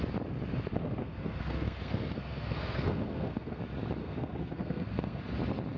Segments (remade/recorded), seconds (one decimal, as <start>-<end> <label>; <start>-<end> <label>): 0.0-0.7 recorded; 0.7-3.6 remade; 3.6-4.0 recorded; 4.0-5.2 remade; 5.2-5.8 recorded